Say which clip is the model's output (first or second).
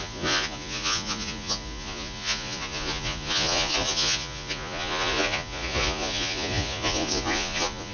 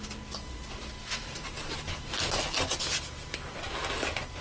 first